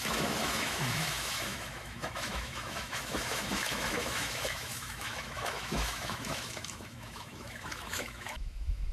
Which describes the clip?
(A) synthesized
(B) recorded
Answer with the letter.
A